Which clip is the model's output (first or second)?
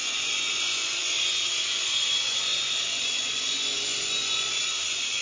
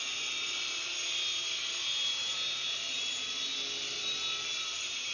first